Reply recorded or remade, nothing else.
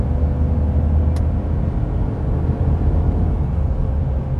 recorded